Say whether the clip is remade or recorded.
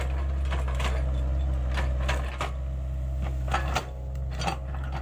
recorded